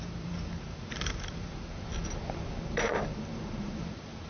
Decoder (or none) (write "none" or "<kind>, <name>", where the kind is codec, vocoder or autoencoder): vocoder, BigVGAN v2